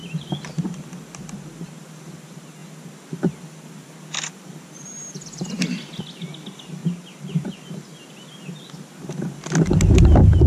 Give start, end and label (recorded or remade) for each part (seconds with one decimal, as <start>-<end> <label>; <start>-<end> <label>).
0.0-6.8 recorded; 6.8-7.6 remade; 7.6-10.5 recorded